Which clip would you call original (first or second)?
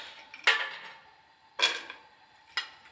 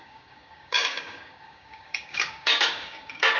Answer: first